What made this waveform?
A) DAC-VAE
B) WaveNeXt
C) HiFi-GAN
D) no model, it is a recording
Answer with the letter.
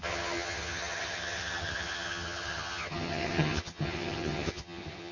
C